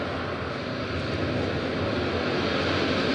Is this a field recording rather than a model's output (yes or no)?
yes